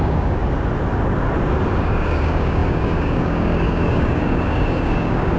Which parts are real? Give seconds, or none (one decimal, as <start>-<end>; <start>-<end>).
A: 0.4-1.8